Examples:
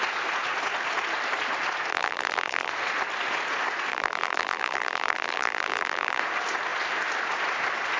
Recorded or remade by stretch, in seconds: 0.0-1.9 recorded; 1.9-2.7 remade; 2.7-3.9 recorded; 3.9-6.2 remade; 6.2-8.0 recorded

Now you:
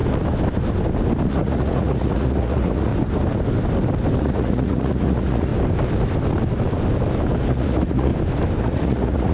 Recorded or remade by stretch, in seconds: 0.0-1.3 recorded; 1.3-2.9 remade; 2.9-4.2 recorded; 4.2-5.5 remade; 5.5-7.5 recorded; 7.5-8.1 remade; 8.1-8.6 recorded; 8.6-9.3 remade

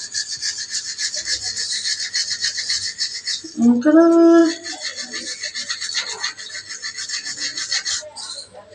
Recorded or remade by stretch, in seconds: 0.0-8.7 recorded